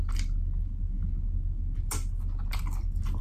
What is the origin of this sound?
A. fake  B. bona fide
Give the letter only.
B